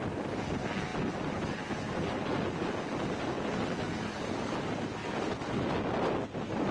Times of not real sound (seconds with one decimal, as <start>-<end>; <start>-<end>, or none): none